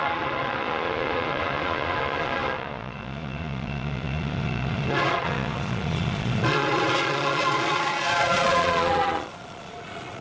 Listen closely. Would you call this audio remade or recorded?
remade